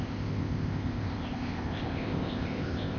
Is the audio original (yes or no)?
no